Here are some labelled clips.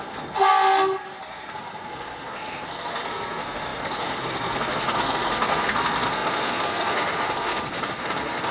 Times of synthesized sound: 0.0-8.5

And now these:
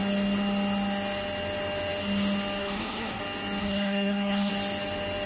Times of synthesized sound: 2.6-3.2; 3.6-4.5

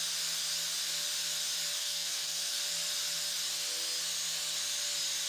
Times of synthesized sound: 1.8-2.6

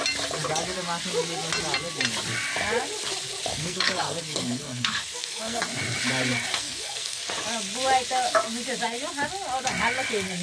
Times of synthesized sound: 3.5-5.6; 6.5-7.2

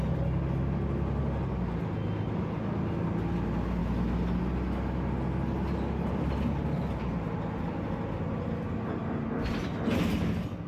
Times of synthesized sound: none

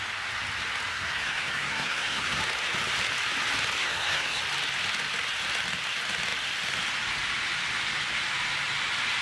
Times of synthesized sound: 0.9-2.4; 3.8-4.4

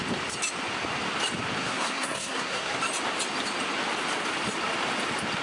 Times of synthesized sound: 1.6-2.8